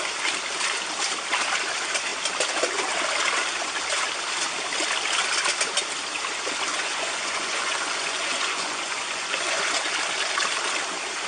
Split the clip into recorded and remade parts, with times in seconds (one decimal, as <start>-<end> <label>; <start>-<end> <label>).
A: 0.0-6.7 recorded; 6.7-9.7 remade; 9.7-11.3 recorded